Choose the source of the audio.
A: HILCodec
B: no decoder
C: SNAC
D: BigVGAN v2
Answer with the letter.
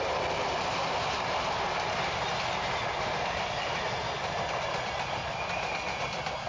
B